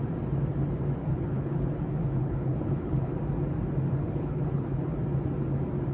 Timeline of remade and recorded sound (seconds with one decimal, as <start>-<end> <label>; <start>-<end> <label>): 0.0-1.0 recorded; 1.0-3.1 remade; 3.1-4.0 recorded; 4.0-4.8 remade; 4.8-5.9 recorded